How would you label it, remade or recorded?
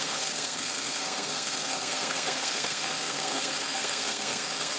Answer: remade